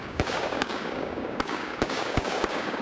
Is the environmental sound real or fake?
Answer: fake